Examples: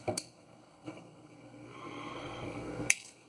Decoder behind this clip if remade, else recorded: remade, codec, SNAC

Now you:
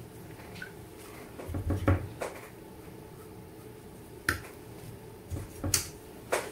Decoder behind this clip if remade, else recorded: recorded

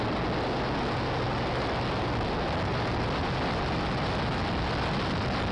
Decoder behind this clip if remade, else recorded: recorded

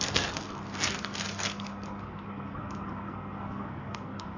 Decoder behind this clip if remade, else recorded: remade, codec, SNAC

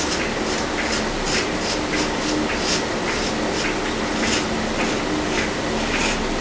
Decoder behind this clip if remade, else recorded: recorded